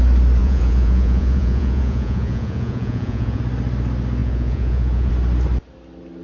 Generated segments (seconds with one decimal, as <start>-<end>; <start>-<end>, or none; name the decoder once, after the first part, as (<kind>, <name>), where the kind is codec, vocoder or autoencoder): 0.4-3.4 (vocoder, Vocos); 4.2-5.1